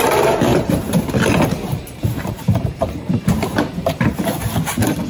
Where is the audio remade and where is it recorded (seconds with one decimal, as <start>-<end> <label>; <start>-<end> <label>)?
0.0-0.5 recorded; 0.5-1.1 remade; 1.1-1.7 recorded; 1.7-4.2 remade; 4.2-5.1 recorded